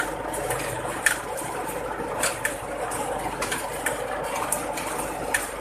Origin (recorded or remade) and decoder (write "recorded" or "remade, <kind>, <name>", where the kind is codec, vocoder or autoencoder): recorded